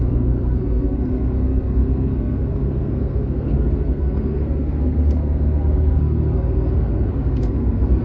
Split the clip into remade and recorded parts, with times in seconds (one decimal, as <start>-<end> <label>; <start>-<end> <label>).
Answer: 0.0-8.0 remade